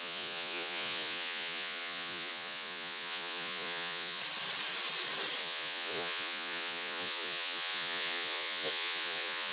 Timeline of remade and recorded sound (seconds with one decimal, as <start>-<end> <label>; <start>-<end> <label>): 0.0-4.2 remade; 4.2-5.4 recorded; 5.4-9.5 remade